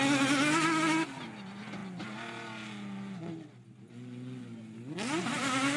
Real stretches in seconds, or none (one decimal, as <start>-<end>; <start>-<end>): 0.0-5.8